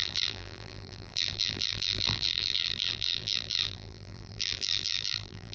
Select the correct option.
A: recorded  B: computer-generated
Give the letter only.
B